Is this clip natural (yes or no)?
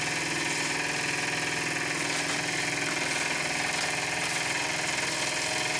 yes